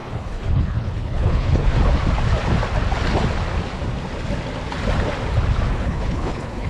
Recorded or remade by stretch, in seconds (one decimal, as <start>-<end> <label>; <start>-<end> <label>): 0.0-1.7 remade; 1.7-5.7 recorded; 5.7-6.7 remade